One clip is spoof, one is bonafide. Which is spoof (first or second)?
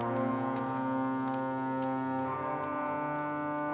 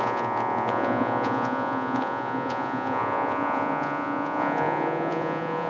second